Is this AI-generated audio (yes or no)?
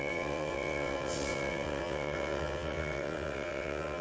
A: yes